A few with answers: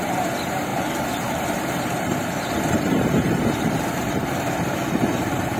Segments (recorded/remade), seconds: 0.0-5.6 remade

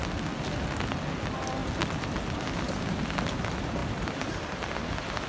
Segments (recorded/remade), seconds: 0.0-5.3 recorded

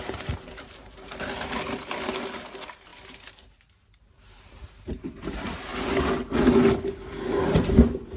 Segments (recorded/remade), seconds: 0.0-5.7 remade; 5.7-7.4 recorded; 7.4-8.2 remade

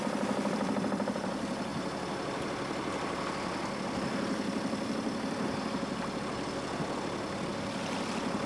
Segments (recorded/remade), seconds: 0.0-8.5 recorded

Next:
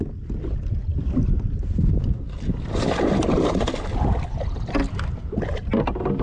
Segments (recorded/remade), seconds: 0.0-6.2 recorded